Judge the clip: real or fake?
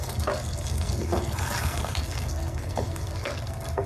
fake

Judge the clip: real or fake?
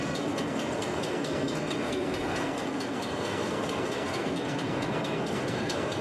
fake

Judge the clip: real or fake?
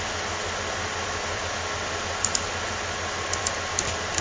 real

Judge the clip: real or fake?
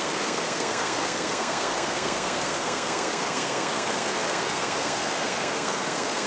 fake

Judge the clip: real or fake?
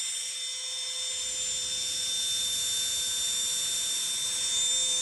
real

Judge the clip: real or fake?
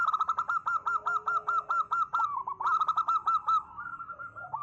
real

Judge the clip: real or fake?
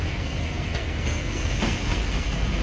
fake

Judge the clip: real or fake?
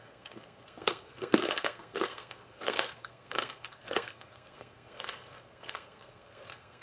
fake